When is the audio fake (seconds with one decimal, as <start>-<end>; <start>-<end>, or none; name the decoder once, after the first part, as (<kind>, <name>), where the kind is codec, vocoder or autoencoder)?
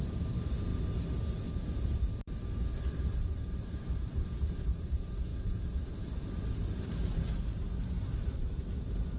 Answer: 0.0-0.7 (vocoder, BigVGAN v2); 1.6-9.2